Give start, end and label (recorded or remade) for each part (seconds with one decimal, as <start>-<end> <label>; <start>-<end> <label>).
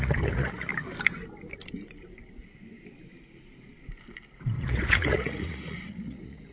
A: 0.0-0.7 remade; 0.7-4.6 recorded; 4.6-6.5 remade